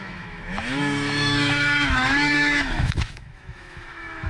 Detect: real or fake fake